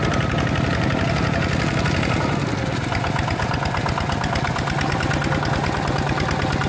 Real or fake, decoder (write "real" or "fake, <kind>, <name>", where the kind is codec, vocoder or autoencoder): real